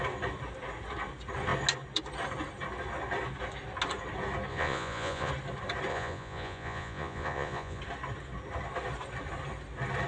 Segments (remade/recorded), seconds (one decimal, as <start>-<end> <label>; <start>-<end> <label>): 0.0-4.5 recorded; 4.5-5.3 remade; 5.3-5.9 recorded; 5.9-7.8 remade; 7.8-10.1 recorded